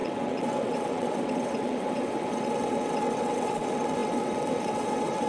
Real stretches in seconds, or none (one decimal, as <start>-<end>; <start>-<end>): none